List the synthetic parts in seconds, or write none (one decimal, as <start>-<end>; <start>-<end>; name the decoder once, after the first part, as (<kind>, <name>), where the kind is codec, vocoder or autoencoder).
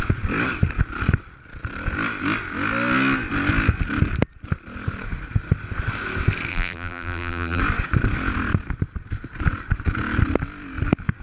6.5-7.6 (vocoder, BigVGAN v2)